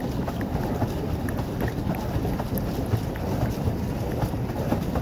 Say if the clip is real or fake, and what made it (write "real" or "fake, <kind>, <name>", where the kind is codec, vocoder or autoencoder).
real